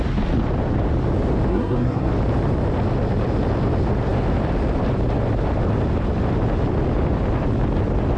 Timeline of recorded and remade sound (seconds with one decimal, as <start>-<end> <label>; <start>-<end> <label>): 0.0-1.5 recorded; 1.5-2.1 remade; 2.1-8.2 recorded